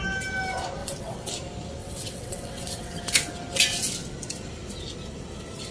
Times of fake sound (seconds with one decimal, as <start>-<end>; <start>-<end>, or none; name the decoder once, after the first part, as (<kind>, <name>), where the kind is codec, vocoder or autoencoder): 0.8-1.3 (vocoder, WaveNeXt); 1.8-3.0